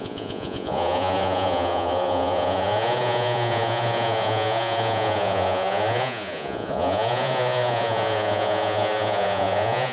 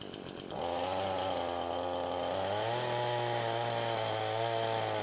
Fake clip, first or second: first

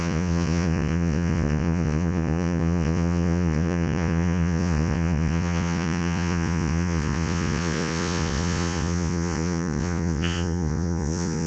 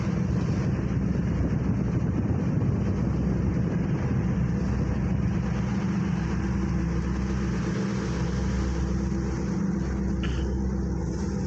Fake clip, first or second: first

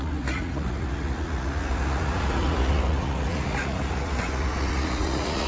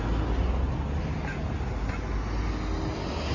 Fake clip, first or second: first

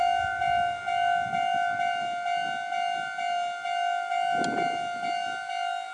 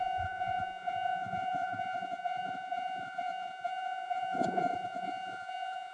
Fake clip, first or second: second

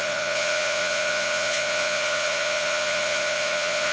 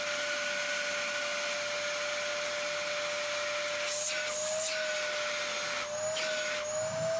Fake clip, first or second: first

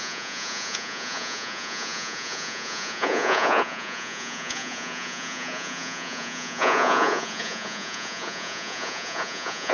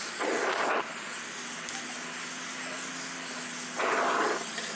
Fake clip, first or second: first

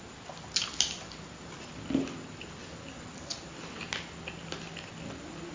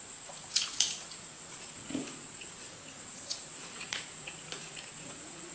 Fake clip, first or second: second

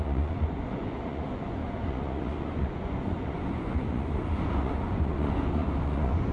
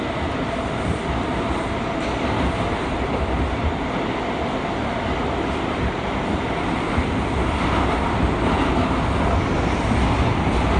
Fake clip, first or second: first